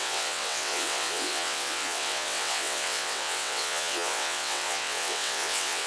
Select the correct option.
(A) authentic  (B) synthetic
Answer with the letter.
B